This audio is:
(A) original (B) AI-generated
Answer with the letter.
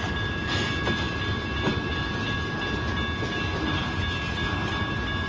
A